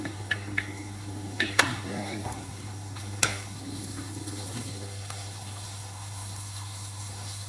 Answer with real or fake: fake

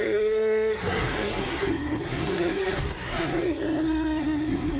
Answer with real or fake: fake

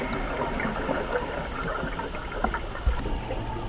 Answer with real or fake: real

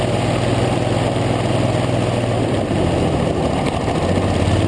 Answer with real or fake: real